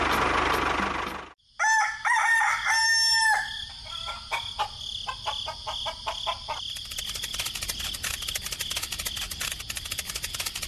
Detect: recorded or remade recorded